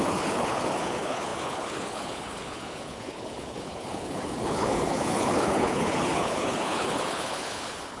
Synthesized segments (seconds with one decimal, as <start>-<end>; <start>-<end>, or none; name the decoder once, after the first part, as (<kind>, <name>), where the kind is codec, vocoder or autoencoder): 0.0-8.0 (codec, HILCodec)